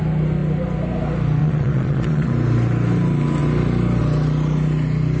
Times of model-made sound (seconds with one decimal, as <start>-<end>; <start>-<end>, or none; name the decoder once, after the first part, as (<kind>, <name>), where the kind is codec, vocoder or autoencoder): 1.4-2.3 (vocoder, Vocos)